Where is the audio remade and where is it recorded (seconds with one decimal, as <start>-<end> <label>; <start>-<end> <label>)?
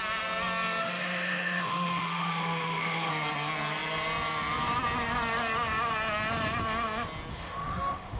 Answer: 0.0-0.8 recorded; 0.8-3.1 remade; 3.1-7.3 recorded; 7.3-8.2 remade